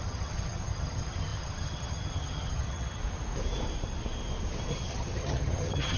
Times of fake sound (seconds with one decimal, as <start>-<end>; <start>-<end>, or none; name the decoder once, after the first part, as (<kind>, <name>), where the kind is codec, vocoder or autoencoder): 0.0-3.0 (vocoder, HiFi-GAN); 4.7-6.0